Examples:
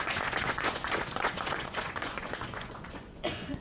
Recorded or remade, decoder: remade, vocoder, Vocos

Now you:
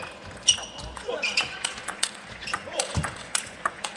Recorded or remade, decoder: remade, vocoder, Vocos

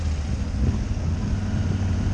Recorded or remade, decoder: recorded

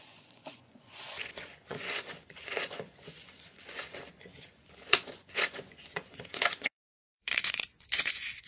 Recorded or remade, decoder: remade, vocoder, Vocos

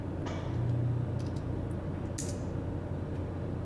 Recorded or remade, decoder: recorded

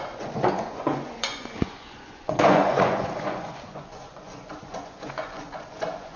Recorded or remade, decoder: remade, vocoder, Vocos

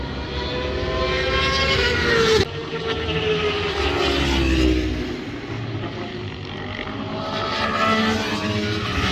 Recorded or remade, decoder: recorded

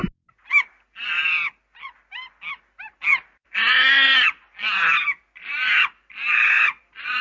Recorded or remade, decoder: recorded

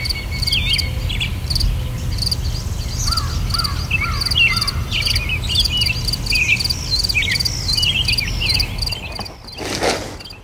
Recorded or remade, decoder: recorded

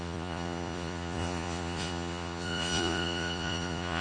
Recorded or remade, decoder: remade, vocoder, Vocos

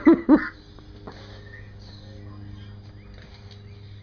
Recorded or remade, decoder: recorded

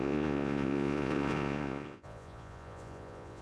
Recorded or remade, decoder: remade, vocoder, Vocos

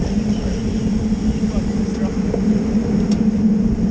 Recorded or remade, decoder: recorded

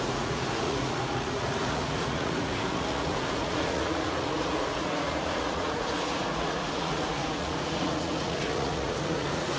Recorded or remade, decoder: remade, vocoder, Vocos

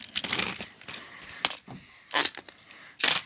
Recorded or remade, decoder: recorded